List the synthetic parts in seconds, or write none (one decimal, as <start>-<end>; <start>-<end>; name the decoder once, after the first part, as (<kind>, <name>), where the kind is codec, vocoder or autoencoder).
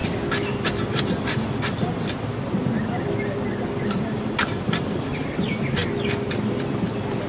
none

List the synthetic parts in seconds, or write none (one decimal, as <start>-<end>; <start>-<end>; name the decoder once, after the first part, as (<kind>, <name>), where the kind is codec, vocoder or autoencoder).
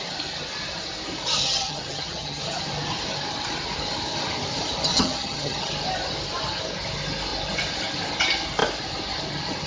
1.4-2.4 (vocoder, HiFi-GAN); 4.9-5.7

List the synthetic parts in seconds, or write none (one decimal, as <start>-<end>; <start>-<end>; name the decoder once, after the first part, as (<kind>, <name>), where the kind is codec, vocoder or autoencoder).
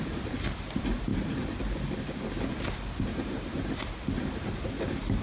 none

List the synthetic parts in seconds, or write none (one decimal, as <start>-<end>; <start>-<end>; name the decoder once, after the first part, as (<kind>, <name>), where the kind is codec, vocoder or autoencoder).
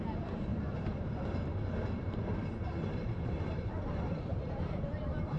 0.0-5.4 (vocoder, BigVGAN v2)